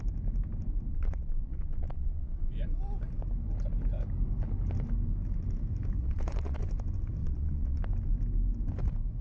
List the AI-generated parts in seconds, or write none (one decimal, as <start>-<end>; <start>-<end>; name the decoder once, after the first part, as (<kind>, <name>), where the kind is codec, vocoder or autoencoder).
0.9-2.5 (vocoder, Vocos); 6.0-6.6; 7.2-7.8